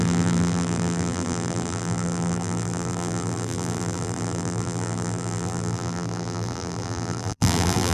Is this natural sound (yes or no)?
no